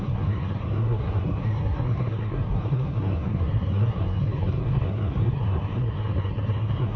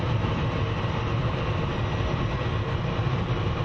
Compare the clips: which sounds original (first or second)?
second